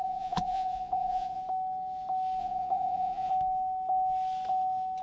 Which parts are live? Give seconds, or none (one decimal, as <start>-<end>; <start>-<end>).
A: 1.4-2.4; 3.3-5.0